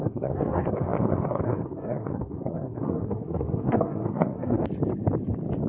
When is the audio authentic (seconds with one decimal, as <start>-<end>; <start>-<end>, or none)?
4.6-5.7